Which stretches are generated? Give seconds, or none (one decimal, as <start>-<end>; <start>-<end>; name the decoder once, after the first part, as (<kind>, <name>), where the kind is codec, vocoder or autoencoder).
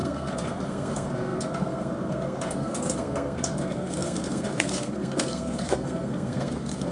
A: 0.0-6.9 (codec, SNAC)